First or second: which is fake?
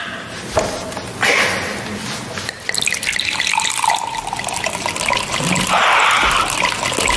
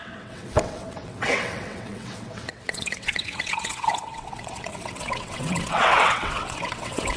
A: second